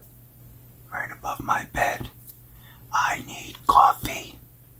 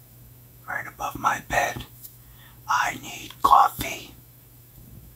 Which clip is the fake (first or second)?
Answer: second